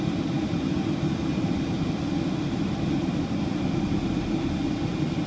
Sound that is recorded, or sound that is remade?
recorded